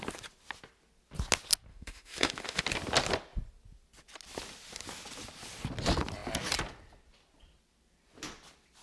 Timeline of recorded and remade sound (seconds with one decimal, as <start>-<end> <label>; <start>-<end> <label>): 0.0-1.7 recorded; 1.7-2.6 remade; 2.6-8.8 recorded